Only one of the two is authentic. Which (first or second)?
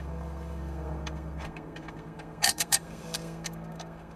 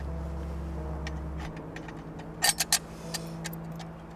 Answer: second